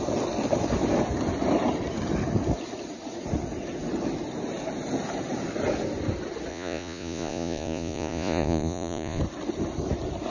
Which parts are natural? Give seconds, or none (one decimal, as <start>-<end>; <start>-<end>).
0.0-6.5; 9.2-10.3

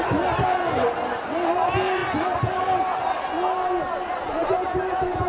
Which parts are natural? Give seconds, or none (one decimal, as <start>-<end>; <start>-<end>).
0.0-5.3

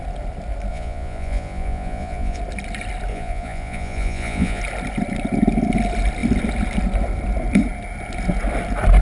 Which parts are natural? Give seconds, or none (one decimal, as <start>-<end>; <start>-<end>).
0.0-0.7; 2.4-3.1; 4.6-9.0

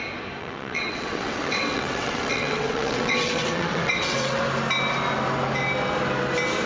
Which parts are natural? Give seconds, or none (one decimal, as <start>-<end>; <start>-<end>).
0.0-0.4; 4.4-6.7

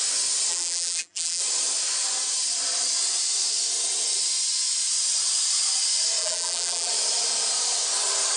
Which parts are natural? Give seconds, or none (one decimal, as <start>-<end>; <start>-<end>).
0.0-0.5; 1.4-6.2; 6.9-8.4